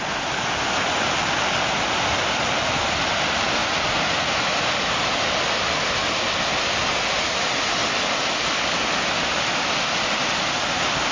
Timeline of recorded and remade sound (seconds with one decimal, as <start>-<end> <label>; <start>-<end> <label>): 0.0-11.1 recorded